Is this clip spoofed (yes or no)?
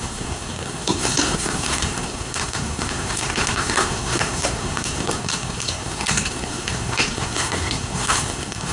yes